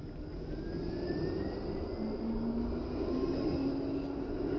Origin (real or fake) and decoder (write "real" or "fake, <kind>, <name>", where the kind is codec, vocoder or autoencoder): real